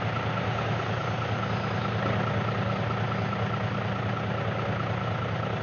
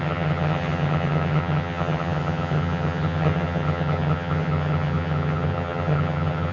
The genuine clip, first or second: first